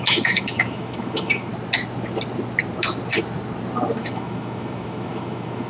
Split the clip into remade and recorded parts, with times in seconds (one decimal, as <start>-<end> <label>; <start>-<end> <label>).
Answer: 0.0-1.5 remade; 1.5-4.0 recorded; 4.0-5.7 remade